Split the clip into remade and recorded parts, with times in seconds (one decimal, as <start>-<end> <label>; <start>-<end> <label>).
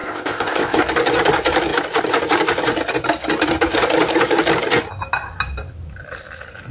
0.0-0.8 remade; 0.8-6.7 recorded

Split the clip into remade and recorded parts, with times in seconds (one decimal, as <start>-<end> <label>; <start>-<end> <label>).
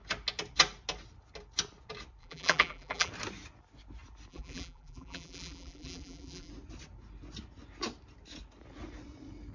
0.0-2.2 recorded; 2.2-3.1 remade; 3.1-4.3 recorded; 4.3-6.5 remade; 6.5-9.5 recorded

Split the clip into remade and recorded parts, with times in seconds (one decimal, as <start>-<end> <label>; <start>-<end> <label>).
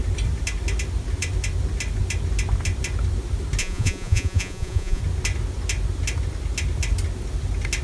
0.0-3.6 recorded; 3.6-5.0 remade; 5.0-7.8 recorded